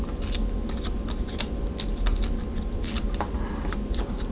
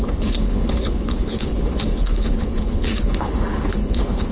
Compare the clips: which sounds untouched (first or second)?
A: first